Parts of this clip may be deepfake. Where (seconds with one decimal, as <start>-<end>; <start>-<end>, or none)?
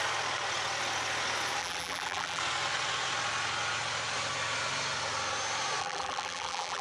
1.6-2.4; 5.8-6.8